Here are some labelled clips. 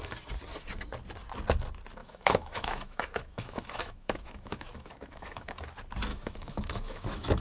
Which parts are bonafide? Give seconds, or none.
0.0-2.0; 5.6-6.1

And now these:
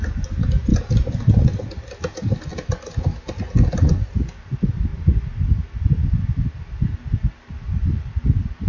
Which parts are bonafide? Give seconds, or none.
0.0-8.7

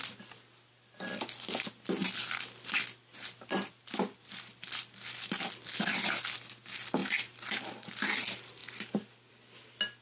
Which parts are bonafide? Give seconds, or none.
0.0-10.0

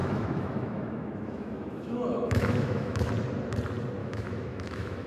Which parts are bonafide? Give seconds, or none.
3.1-4.0

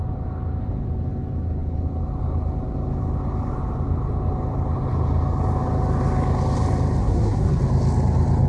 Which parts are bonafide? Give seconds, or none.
0.0-7.0; 7.6-8.5